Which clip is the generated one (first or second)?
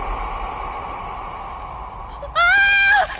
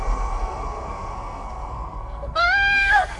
second